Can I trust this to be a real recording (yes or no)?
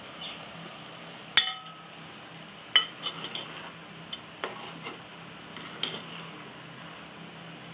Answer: yes